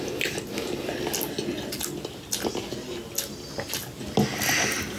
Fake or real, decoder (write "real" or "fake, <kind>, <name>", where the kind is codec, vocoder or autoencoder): real